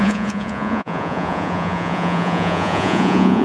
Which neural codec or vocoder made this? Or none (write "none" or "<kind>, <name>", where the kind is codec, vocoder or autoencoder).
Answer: vocoder, Vocos